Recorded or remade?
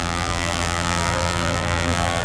remade